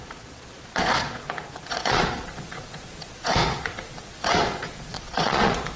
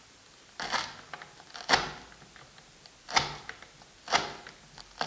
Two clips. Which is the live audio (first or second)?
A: second